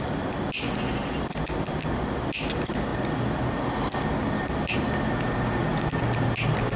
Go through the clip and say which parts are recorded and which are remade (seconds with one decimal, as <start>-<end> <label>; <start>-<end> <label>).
0.0-6.8 recorded